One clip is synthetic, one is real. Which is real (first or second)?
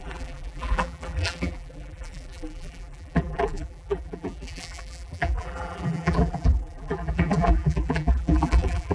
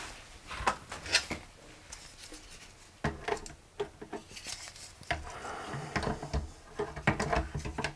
second